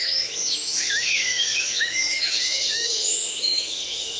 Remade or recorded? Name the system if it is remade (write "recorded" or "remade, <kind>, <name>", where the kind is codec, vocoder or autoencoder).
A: remade, autoencoder, DAC-VAE